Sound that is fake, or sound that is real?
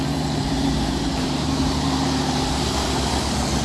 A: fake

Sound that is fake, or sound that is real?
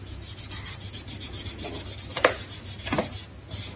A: real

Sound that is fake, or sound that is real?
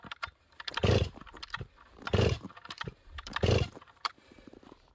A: fake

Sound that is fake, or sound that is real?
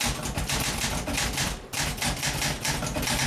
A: real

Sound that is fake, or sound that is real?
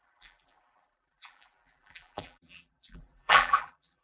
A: fake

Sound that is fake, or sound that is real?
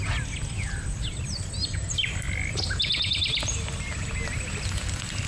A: real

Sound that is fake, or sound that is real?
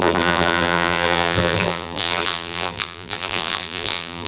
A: fake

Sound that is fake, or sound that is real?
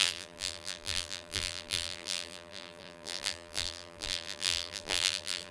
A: fake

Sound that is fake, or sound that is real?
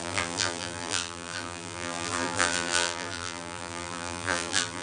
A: fake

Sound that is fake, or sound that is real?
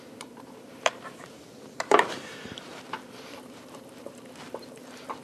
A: fake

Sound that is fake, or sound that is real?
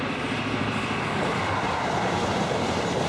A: fake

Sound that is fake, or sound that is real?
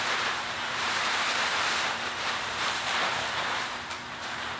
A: fake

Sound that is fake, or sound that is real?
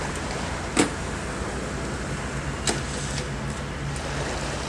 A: real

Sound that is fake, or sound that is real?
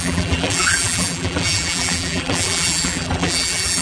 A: fake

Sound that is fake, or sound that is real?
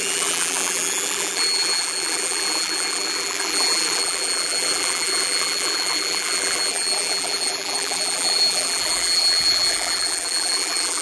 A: fake